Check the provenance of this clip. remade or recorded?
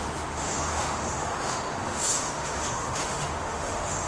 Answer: remade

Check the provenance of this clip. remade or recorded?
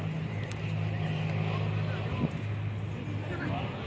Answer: recorded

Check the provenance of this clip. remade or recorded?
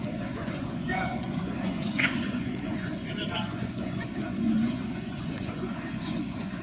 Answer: remade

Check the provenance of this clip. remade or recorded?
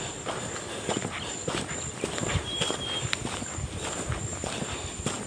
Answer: recorded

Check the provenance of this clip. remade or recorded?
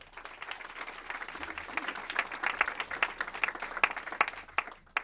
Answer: recorded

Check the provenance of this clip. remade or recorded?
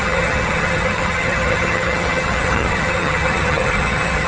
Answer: remade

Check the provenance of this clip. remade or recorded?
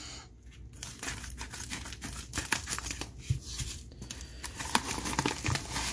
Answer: recorded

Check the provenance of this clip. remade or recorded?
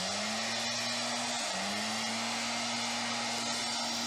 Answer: recorded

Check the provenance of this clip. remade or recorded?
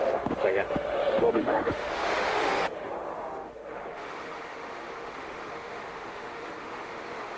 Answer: remade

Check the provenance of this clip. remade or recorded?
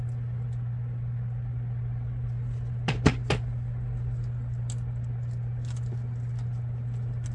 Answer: recorded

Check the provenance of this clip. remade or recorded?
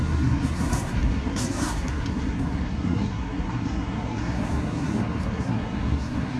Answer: remade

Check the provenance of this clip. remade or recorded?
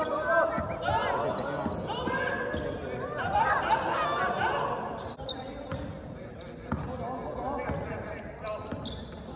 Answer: recorded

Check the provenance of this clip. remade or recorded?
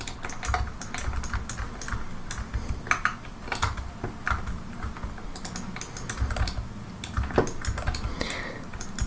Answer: recorded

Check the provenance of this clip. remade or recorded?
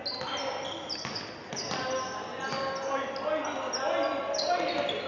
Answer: recorded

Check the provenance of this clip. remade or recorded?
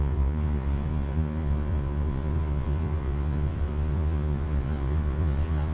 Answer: remade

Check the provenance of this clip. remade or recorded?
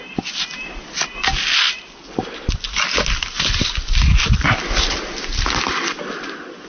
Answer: recorded